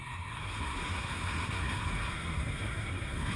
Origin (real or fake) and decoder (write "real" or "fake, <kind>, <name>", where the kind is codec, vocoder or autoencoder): fake, codec, SNAC